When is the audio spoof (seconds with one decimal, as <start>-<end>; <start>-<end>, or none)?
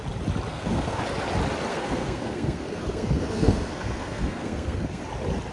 0.5-1.0; 1.7-5.0